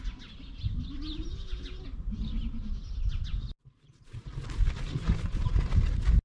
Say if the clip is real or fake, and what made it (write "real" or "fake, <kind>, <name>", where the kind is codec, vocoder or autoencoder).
real